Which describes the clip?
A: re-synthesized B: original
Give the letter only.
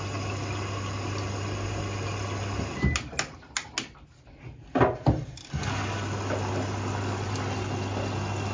B